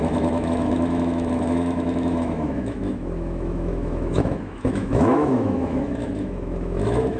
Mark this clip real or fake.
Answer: fake